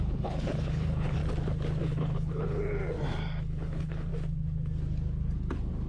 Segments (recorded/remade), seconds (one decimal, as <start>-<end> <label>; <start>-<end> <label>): 0.0-1.2 remade; 1.2-1.8 recorded; 1.8-2.8 remade; 2.8-3.4 recorded; 3.4-4.1 remade; 4.1-5.9 recorded